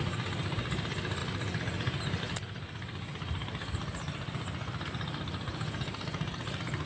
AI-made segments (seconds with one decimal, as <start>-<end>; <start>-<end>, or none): none